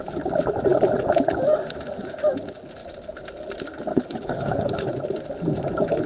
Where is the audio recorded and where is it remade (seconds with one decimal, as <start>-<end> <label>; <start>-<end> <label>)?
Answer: 0.0-3.9 recorded; 3.9-4.9 remade; 4.9-6.1 recorded